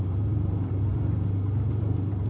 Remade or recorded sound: remade